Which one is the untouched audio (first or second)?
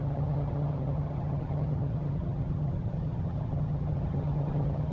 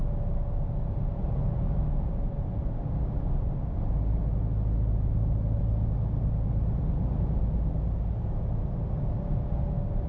second